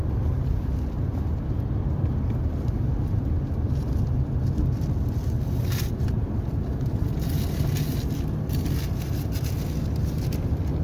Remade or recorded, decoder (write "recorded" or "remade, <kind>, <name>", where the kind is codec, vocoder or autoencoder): recorded